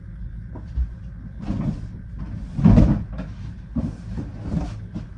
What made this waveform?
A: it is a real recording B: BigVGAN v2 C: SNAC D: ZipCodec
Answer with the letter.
A